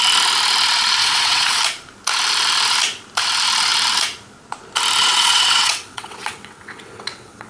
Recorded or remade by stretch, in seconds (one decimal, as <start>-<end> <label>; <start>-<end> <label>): 0.0-1.0 recorded; 1.0-1.6 remade; 1.6-5.0 recorded; 5.0-7.5 remade